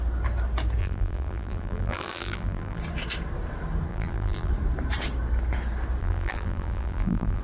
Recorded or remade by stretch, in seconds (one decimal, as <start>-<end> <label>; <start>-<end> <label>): 0.0-0.8 recorded; 0.8-2.8 remade; 2.8-3.9 recorded; 3.9-4.5 remade; 4.5-6.0 recorded; 6.0-7.4 remade